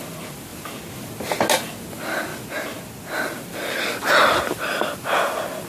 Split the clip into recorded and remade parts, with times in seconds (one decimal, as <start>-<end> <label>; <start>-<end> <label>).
0.0-5.7 recorded